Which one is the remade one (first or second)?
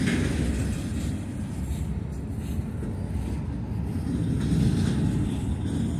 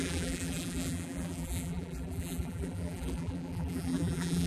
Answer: second